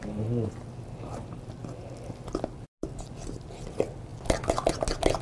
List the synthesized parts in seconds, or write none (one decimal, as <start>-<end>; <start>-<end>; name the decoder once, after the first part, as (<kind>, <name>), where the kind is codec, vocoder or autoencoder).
none